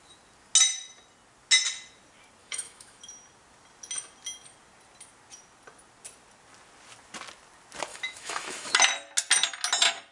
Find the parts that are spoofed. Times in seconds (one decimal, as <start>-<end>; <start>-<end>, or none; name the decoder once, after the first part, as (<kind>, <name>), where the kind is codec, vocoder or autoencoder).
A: 2.4-3.0 (autoencoder, DAC-VAE); 7.9-8.7